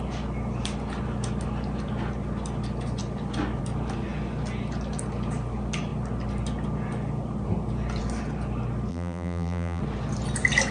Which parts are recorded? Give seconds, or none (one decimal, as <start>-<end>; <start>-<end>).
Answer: 0.0-8.9; 9.8-10.7